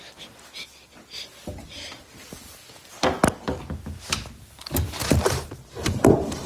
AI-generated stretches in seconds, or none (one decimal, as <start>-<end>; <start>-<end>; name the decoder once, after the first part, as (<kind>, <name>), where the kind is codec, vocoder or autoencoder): 5.0-5.7 (vocoder, BigVGAN v2)